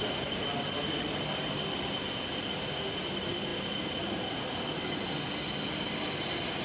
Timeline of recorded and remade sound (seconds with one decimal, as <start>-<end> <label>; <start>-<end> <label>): 0.0-6.6 recorded